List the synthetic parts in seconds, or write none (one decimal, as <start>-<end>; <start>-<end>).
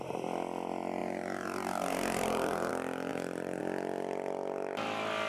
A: 1.0-2.7; 3.1-3.6